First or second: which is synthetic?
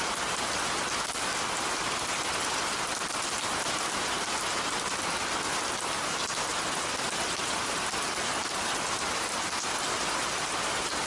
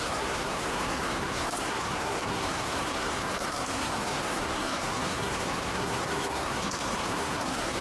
second